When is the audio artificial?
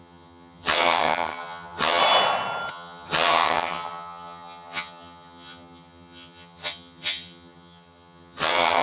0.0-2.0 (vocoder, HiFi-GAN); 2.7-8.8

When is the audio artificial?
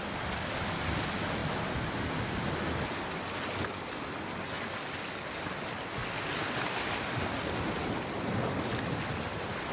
none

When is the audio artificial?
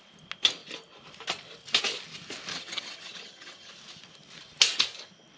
2.5-3.7 (vocoder, HiFi-GAN)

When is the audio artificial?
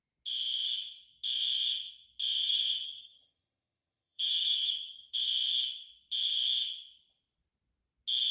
2.4-5.1 (vocoder, HiFi-GAN)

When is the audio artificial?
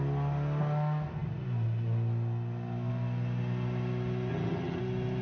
4.3-4.8 (vocoder, HiFi-GAN)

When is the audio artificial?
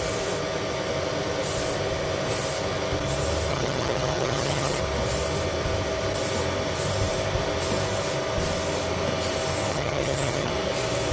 3.5-4.8 (vocoder, HiFi-GAN); 9.7-10.5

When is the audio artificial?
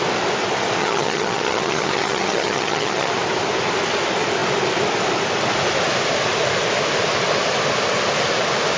0.8-3.1 (vocoder, HiFi-GAN)